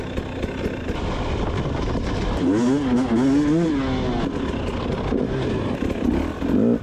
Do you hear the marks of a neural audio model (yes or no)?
no